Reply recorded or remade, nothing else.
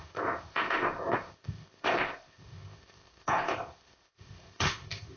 remade